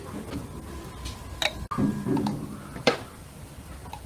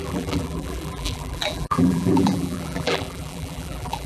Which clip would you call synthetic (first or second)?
second